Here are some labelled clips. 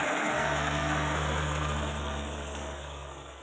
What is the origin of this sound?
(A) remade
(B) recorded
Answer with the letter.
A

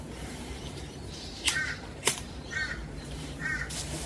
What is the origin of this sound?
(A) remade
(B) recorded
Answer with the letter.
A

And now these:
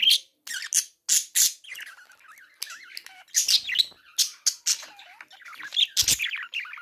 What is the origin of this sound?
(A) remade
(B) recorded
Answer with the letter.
B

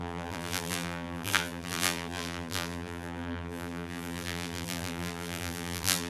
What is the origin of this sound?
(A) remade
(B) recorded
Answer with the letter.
A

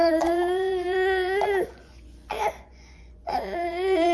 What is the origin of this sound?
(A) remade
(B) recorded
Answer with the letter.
A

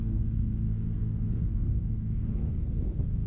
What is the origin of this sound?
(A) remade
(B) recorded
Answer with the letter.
A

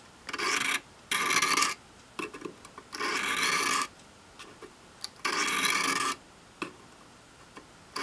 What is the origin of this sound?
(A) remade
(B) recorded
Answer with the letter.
B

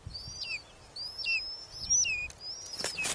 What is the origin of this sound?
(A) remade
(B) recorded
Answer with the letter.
B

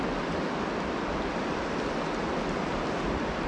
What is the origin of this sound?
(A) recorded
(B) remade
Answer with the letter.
A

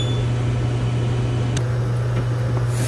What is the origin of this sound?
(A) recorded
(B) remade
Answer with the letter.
A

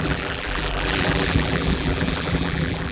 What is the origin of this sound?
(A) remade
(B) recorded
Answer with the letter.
A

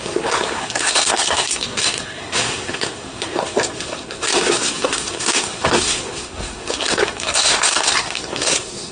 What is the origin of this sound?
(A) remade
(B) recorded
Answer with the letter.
A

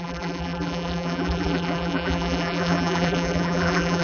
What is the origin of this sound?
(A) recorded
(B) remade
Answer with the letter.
B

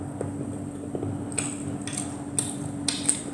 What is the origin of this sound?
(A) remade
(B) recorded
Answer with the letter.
B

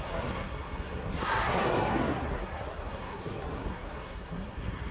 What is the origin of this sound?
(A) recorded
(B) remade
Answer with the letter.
B